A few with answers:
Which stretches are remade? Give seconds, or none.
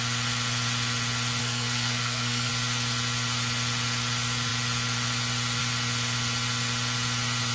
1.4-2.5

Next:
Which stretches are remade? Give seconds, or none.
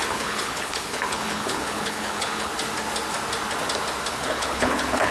0.0-2.5; 4.1-5.1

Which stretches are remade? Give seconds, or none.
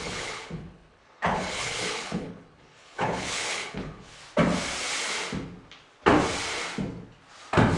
0.0-4.2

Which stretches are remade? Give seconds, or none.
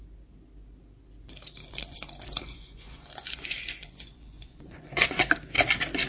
1.6-5.3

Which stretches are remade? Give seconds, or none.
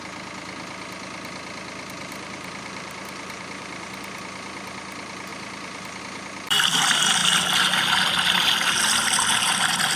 2.0-4.2; 5.3-6.0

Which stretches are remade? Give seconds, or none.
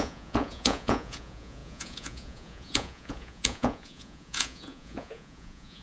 0.0-5.8